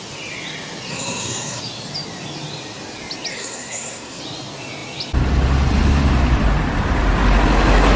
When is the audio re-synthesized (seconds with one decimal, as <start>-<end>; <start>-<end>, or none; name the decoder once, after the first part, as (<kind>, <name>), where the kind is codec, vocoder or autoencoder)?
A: 0.9-1.6 (codec, SNAC); 3.3-4.2